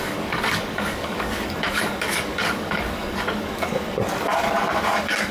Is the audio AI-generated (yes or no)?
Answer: yes